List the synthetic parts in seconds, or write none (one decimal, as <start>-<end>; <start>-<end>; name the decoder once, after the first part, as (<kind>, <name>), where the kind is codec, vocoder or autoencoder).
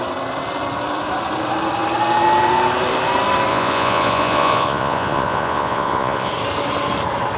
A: 3.5-6.3 (vocoder, Vocos)